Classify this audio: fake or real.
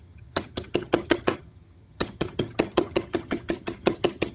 fake